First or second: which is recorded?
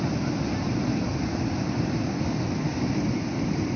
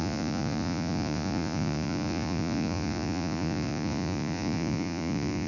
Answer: first